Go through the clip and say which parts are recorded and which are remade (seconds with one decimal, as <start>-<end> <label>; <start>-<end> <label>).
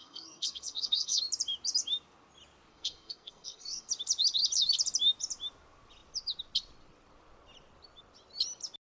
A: 0.0-1.2 remade; 1.2-2.7 recorded; 2.7-3.9 remade; 3.9-8.9 recorded